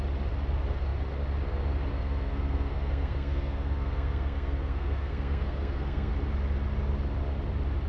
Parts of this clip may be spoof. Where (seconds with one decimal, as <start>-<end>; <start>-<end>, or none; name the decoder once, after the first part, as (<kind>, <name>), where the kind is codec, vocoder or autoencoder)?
1.9-6.1 (codec, SNAC)